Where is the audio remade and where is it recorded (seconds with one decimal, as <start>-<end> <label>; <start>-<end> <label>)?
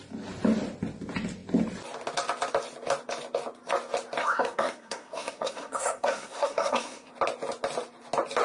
0.0-4.2 recorded; 4.2-7.1 remade; 7.1-8.4 recorded